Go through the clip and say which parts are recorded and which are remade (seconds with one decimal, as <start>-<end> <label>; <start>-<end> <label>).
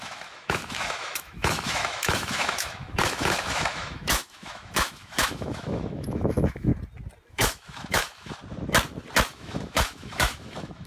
0.0-6.7 remade; 6.7-7.3 recorded; 7.3-8.4 remade; 8.4-9.3 recorded; 9.3-10.9 remade